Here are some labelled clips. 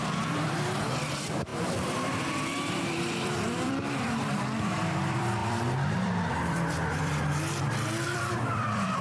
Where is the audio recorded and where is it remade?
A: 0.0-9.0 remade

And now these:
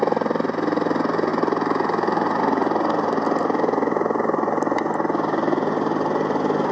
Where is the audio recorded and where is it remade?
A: 0.0-6.7 recorded

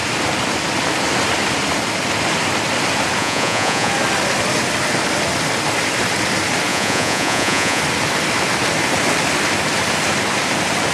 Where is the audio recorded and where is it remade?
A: 0.0-3.2 recorded; 3.2-3.9 remade; 3.9-6.7 recorded; 6.7-7.8 remade; 7.8-10.9 recorded

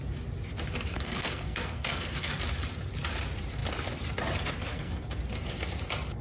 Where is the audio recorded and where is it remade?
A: 0.0-0.9 recorded; 0.9-2.4 remade; 2.4-4.7 recorded; 4.7-5.2 remade; 5.2-6.2 recorded

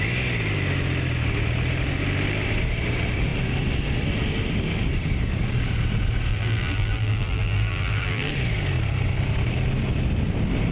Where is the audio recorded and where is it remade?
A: 0.0-6.3 recorded; 6.3-8.3 remade; 8.3-10.7 recorded

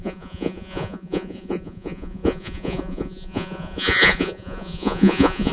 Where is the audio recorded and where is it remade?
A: 0.0-5.5 remade